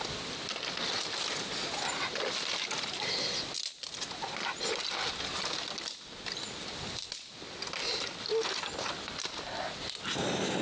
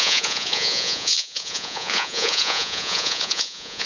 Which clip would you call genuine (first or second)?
first